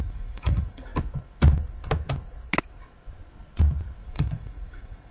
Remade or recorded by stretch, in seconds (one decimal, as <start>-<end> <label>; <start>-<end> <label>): 0.0-0.9 remade; 0.9-4.0 recorded; 4.0-5.1 remade